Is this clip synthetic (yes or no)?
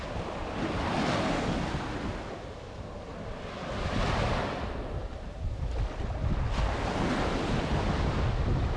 no